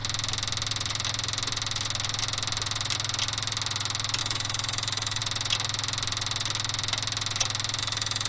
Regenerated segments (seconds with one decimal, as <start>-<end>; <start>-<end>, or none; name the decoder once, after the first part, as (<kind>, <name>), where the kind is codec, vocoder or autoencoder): 4.2-5.2 (autoencoder, DAC-VAE); 7.8-8.3